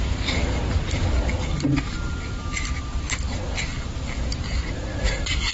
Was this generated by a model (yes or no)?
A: no